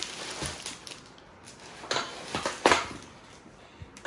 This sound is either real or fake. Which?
real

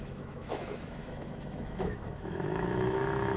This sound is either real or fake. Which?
fake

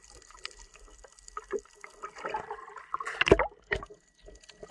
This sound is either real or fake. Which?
real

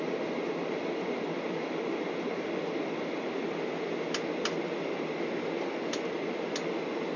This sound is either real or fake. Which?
real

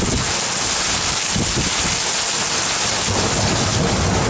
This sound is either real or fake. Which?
real